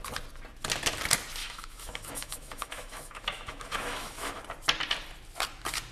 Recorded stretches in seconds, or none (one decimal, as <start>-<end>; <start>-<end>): 0.0-1.4; 4.4-5.9